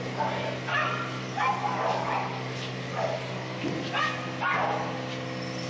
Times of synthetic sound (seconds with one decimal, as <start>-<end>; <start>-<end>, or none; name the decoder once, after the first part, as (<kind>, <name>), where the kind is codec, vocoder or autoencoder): 0.7-3.6 (codec, DAC)